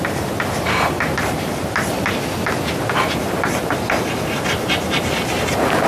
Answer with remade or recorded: recorded